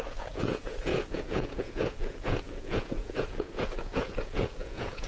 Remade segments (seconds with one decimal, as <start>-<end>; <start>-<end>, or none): 0.0-5.1